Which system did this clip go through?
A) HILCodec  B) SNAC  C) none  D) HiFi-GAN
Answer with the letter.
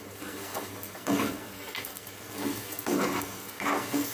B